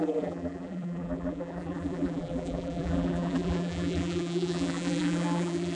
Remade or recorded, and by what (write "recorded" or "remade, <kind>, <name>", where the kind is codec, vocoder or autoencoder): remade, vocoder, BigVGAN v2